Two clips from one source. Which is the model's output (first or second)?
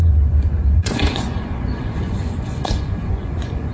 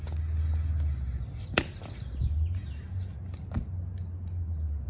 first